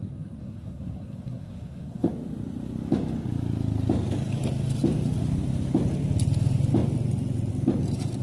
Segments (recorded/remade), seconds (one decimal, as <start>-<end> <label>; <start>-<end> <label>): 0.0-2.1 remade; 2.1-8.2 recorded